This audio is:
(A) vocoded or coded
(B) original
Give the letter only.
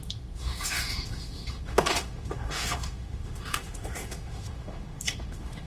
A